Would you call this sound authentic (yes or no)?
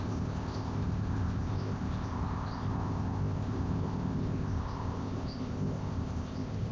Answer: no